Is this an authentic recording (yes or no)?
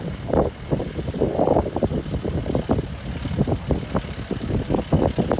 yes